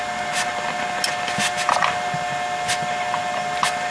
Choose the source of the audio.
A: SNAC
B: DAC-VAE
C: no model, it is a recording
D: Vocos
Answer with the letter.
C